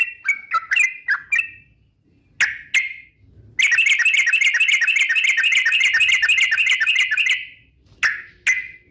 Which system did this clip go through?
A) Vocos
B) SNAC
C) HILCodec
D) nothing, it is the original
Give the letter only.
D